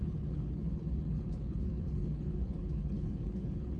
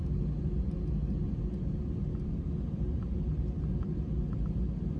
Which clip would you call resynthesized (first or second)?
first